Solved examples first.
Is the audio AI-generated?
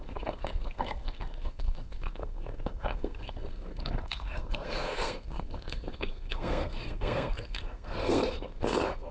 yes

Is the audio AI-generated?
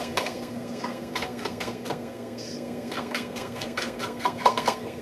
yes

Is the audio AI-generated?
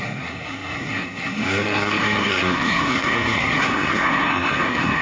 yes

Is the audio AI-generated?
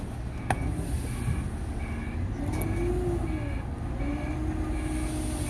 no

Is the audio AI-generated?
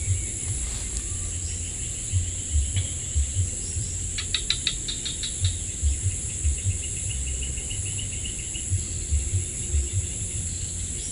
no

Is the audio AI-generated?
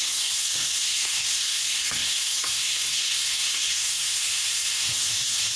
yes